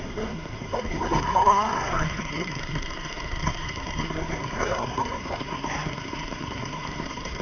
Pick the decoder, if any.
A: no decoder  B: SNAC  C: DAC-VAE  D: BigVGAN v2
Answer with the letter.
B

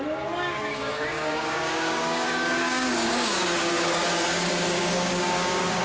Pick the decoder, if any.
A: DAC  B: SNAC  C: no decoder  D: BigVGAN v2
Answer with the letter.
A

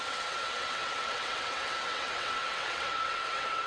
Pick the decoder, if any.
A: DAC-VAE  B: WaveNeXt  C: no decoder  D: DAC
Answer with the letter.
B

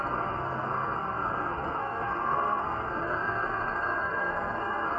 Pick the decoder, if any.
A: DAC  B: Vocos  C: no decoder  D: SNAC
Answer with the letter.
D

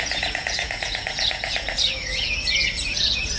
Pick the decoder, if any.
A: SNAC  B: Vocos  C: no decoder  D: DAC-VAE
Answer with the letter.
B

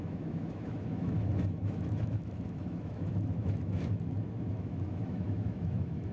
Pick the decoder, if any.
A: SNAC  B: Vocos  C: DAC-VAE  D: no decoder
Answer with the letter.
C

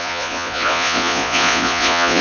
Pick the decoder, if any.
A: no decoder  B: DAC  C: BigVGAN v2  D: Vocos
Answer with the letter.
D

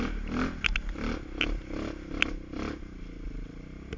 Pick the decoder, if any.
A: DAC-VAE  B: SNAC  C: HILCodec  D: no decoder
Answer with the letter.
D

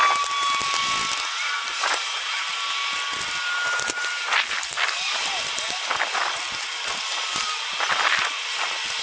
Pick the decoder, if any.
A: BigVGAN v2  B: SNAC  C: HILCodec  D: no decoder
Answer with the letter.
D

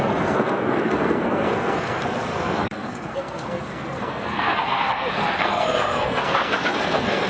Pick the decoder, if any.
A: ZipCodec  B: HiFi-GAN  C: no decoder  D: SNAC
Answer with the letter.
D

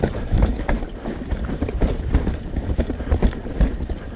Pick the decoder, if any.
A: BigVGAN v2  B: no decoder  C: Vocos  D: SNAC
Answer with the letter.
A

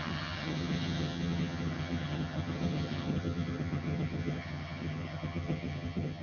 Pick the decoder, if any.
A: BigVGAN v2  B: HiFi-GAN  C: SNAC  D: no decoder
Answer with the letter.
B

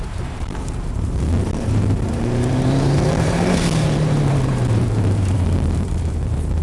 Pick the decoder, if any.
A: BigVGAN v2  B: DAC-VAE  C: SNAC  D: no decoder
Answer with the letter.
A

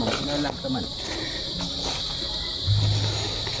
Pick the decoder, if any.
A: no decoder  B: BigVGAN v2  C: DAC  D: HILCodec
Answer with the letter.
A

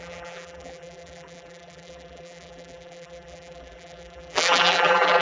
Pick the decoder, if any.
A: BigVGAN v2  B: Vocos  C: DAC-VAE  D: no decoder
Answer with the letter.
A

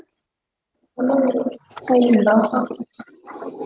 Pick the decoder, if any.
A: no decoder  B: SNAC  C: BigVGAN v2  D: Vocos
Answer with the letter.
C